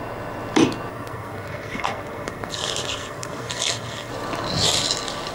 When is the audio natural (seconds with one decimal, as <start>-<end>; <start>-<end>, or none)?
0.0-0.9; 4.1-5.3